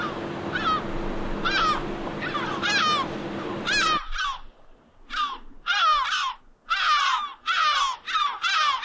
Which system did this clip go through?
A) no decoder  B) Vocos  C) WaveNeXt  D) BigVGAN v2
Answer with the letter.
A